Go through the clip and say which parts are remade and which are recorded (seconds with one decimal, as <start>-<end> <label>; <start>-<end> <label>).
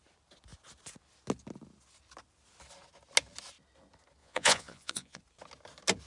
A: 0.0-4.2 recorded; 4.2-5.2 remade; 5.2-6.1 recorded